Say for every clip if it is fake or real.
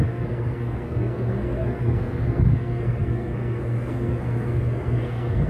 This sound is fake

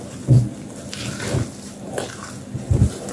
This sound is real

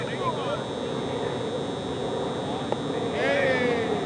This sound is real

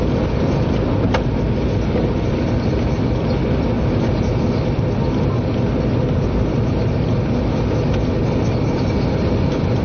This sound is real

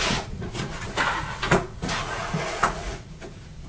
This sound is fake